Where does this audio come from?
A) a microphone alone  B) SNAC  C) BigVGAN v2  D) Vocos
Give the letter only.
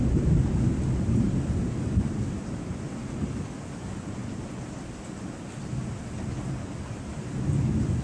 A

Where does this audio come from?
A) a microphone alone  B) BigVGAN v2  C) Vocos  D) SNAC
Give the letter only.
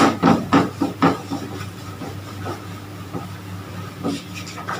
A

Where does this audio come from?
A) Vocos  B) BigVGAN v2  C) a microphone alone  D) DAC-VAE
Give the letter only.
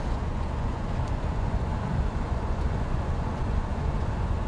A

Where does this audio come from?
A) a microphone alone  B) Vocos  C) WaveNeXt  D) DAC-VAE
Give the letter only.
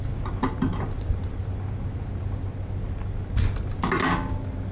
A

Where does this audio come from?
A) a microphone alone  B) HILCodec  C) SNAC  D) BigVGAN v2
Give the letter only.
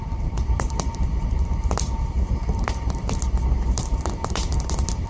D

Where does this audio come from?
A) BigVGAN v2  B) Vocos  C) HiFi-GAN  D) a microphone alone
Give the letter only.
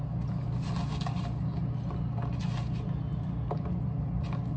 D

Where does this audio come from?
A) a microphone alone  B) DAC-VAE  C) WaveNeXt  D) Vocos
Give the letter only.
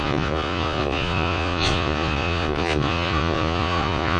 D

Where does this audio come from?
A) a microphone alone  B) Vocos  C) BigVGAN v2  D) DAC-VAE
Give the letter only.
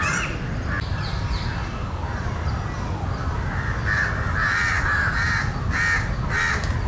A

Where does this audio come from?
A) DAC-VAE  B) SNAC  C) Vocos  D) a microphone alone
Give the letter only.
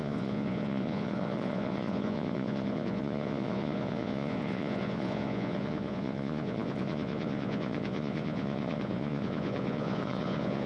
C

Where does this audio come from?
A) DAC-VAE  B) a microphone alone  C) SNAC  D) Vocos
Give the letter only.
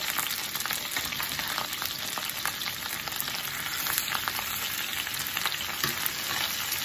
B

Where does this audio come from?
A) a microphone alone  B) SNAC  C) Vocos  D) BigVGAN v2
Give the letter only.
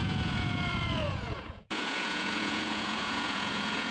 C